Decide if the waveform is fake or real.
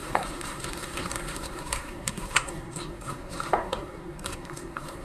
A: fake